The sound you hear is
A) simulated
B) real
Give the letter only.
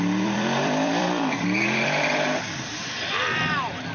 A